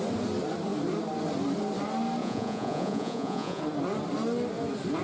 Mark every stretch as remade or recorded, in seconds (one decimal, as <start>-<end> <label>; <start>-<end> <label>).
0.0-2.2 recorded; 2.2-3.6 remade; 3.6-5.0 recorded